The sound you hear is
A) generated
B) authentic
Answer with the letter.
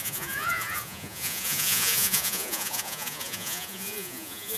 A